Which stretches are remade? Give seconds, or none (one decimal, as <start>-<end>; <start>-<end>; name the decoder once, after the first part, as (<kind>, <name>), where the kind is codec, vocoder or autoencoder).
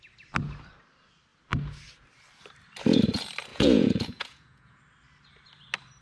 3.5-4.8 (vocoder, Vocos)